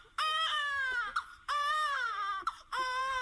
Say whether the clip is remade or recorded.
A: remade